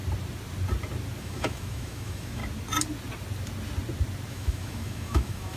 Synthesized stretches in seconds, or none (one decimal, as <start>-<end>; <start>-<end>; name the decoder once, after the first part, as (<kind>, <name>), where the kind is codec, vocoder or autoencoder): 1.2-2.4 (autoencoder, DAC-VAE); 4.3-5.6